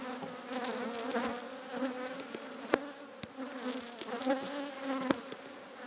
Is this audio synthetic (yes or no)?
no